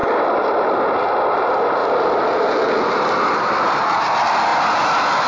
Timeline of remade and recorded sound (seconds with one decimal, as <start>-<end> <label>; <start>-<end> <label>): 0.0-0.7 remade; 0.7-1.8 recorded; 1.8-2.5 remade; 2.5-5.3 recorded